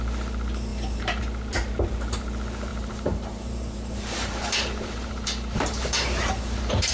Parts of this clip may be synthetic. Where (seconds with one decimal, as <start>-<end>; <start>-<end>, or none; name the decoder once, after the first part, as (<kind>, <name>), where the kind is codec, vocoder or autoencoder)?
0.7-1.2 (vocoder, BigVGAN v2); 2.7-6.9